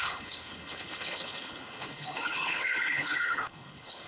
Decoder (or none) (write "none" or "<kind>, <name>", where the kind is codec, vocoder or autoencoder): codec, HILCodec